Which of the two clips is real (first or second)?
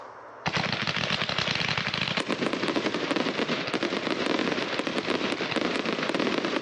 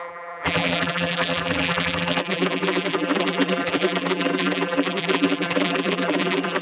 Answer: first